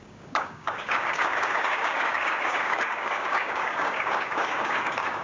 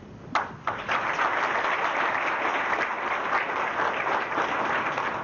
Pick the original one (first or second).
second